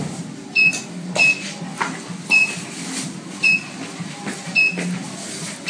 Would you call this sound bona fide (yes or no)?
yes